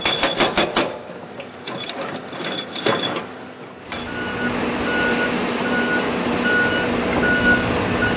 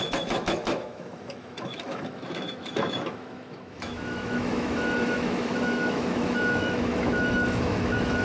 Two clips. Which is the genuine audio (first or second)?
first